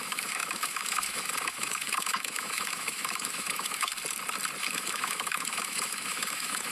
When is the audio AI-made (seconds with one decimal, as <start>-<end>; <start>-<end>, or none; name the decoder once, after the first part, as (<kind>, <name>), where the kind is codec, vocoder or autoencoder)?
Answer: 0.0-3.9 (autoencoder, DAC-VAE); 4.6-6.7